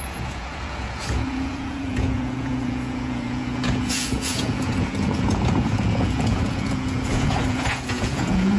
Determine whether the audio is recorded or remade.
remade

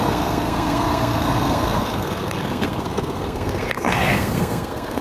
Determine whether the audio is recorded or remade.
remade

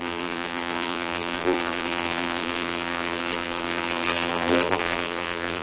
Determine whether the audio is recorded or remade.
remade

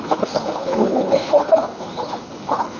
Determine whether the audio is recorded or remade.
remade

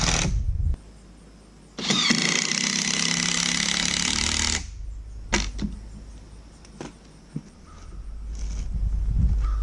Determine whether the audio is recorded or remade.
recorded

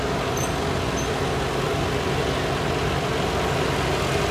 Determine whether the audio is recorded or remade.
recorded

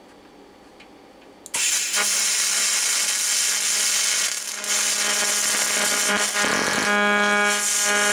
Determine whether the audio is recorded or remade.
recorded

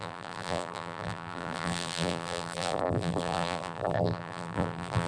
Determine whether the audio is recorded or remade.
remade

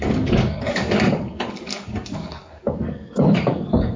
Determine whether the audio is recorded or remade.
remade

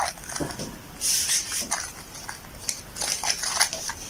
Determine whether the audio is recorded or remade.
recorded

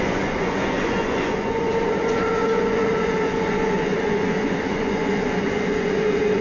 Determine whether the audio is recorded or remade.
remade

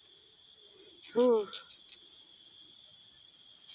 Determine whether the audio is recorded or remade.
recorded